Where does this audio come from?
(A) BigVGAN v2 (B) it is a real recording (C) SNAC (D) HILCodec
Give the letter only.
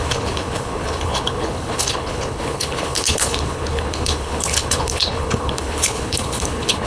D